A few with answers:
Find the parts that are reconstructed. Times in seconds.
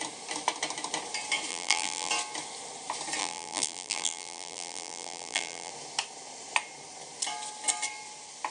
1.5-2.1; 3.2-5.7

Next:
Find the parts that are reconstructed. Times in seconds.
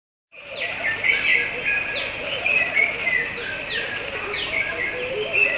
none